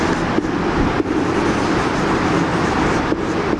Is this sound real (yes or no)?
no